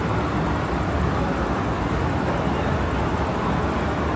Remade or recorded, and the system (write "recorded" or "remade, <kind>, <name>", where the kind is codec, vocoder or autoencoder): recorded